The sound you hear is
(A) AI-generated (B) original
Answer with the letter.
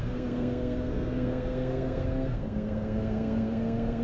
A